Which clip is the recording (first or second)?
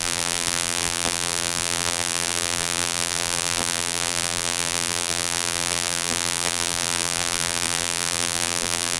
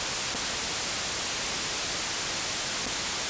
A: second